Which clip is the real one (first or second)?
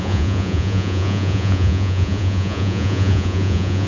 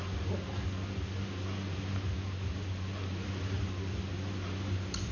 second